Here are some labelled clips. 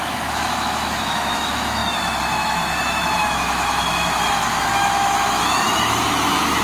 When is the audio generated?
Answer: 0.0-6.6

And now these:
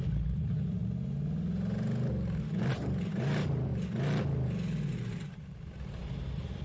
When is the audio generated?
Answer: 0.0-0.8; 2.7-3.7; 4.9-6.6

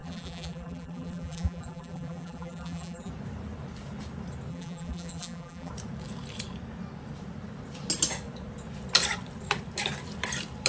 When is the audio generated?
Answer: 0.0-3.1; 4.5-5.7

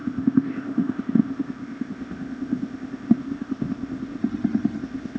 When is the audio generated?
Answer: 0.0-4.2; 4.8-5.2

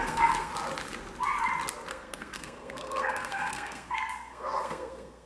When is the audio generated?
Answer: 0.0-0.5; 1.9-5.3

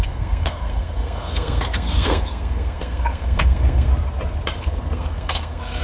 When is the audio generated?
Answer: 0.0-3.9; 4.6-5.8

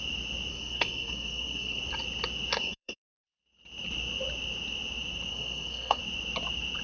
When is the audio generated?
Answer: 0.5-1.8; 2.6-3.1; 5.3-6.0